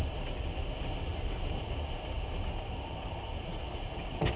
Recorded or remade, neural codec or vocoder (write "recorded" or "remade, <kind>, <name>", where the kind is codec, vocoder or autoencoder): recorded